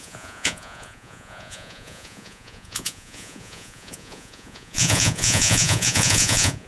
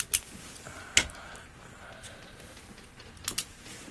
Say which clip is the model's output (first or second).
first